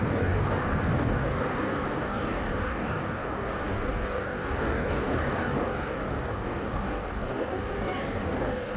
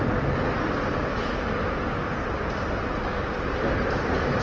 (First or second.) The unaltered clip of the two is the second